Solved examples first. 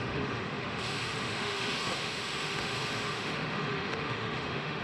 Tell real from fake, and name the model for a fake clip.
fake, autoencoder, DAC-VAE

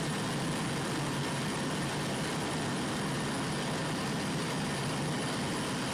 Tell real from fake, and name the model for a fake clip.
real